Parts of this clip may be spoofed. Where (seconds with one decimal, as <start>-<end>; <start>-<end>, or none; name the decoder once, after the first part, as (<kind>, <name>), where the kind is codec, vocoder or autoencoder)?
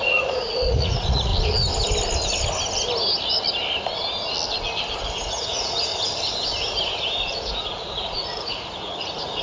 0.0-1.3 (vocoder, Vocos); 5.1-5.9; 7.2-9.4